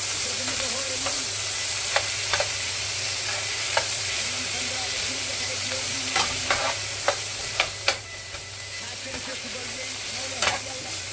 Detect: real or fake fake